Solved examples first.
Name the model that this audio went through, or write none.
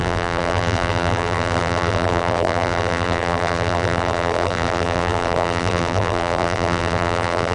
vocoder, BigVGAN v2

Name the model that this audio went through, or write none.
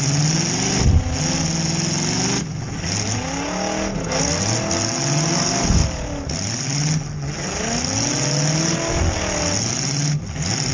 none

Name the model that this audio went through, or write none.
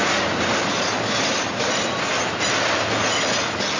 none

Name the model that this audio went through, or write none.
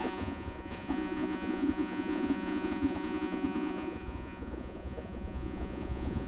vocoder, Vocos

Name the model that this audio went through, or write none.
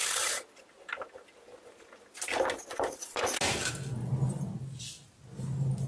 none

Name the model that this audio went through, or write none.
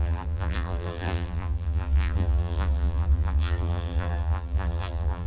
vocoder, BigVGAN v2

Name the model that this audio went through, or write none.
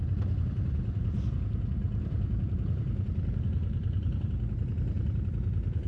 none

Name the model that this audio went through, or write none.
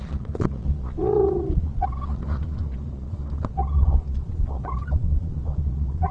vocoder, Vocos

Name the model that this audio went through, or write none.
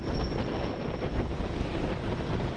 none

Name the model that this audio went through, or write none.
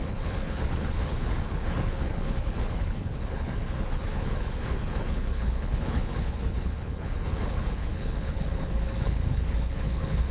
codec, HILCodec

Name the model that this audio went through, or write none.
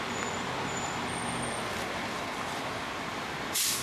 none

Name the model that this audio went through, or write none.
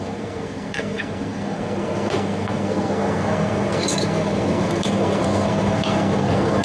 codec, SNAC